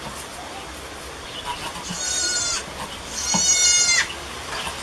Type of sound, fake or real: real